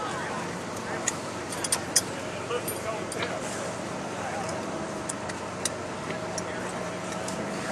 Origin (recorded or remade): recorded